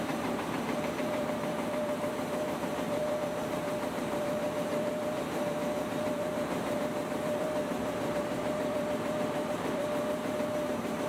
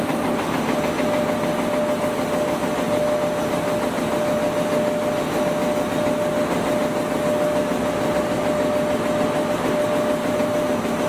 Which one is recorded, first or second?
second